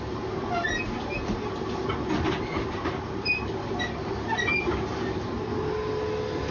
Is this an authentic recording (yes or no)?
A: yes